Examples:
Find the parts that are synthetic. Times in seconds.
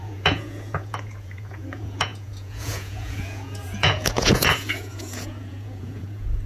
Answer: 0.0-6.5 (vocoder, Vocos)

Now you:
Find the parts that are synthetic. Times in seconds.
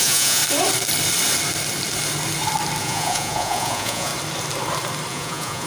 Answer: 0.0-0.4 (vocoder, Vocos); 2.8-4.1; 5.1-5.7